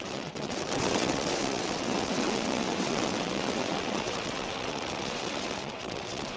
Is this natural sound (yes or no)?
no